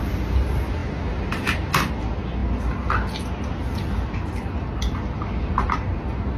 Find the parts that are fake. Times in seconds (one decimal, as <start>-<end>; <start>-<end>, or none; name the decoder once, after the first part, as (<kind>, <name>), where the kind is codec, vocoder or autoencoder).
none